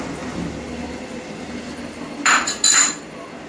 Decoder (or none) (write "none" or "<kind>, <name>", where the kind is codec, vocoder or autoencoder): none